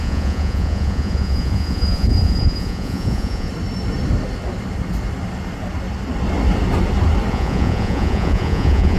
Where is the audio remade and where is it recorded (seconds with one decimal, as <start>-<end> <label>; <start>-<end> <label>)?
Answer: 0.0-3.5 remade; 3.5-7.3 recorded; 7.3-9.0 remade